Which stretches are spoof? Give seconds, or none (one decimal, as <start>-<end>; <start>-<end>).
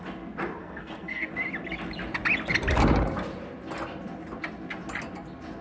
0.6-1.3